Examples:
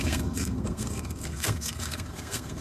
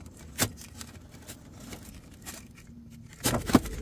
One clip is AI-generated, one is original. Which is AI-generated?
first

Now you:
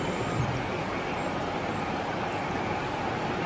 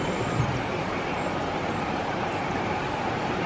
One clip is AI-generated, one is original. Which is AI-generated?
second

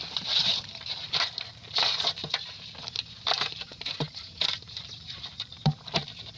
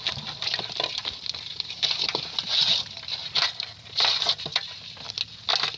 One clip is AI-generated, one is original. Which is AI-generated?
first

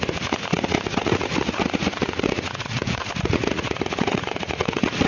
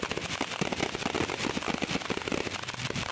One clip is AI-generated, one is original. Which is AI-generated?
first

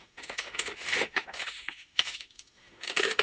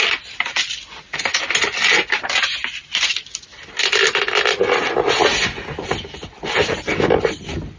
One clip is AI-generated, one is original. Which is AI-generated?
first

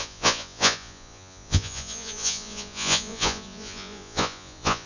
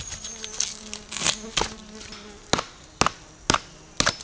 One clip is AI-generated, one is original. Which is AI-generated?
first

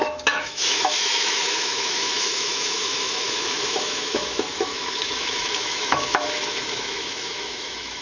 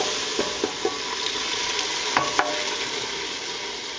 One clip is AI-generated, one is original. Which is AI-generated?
first